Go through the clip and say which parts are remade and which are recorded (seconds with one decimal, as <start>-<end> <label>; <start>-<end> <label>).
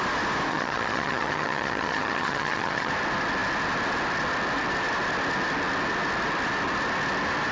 0.0-0.5 recorded; 0.5-2.9 remade; 2.9-7.5 recorded